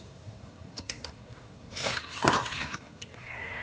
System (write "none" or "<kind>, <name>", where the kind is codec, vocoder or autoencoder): codec, SNAC